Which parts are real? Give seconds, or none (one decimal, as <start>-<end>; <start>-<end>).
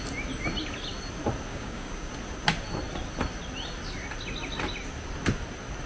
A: 0.0-1.5; 2.1-5.9